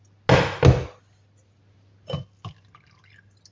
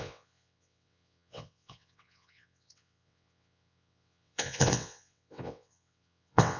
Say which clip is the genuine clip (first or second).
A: first